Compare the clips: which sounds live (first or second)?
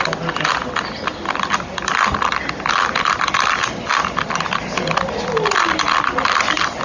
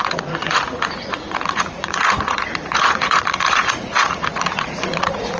first